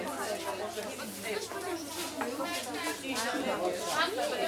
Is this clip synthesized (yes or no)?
no